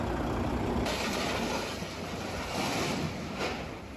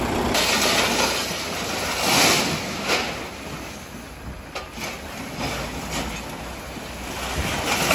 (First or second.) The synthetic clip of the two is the first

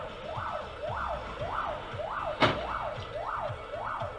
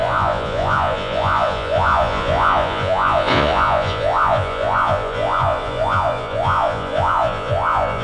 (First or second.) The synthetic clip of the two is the second